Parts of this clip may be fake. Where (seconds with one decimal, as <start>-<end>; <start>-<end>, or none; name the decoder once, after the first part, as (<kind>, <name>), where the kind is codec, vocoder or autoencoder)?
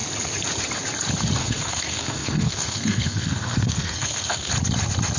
1.4-4.5 (codec, SNAC)